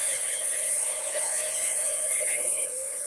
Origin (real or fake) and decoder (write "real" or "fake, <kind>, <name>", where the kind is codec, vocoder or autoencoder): fake, codec, HILCodec